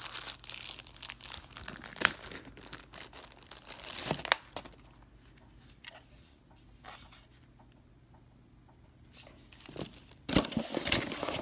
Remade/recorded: recorded